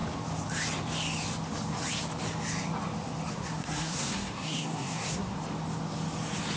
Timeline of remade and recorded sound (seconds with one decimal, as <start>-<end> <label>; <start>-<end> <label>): 0.0-3.3 recorded; 3.3-5.4 remade; 5.4-6.6 recorded